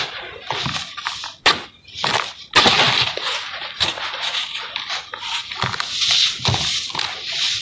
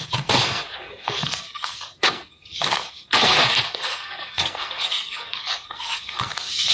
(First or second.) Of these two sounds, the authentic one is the first